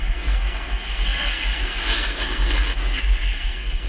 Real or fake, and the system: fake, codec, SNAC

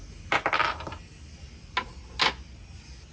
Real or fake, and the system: real